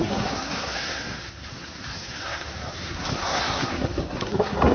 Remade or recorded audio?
remade